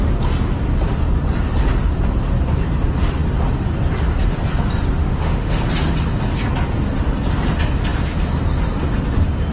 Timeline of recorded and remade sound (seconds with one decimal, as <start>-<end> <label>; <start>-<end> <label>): 0.0-5.0 recorded; 5.0-5.6 remade; 5.6-9.5 recorded